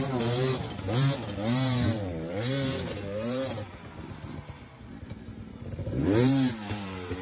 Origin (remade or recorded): remade